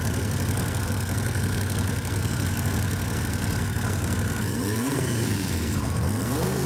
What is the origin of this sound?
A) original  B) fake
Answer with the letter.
B